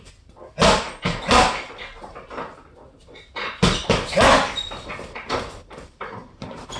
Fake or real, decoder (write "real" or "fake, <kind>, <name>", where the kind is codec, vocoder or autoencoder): real